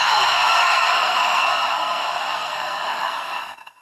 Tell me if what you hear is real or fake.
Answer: fake